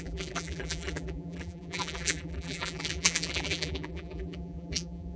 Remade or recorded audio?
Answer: remade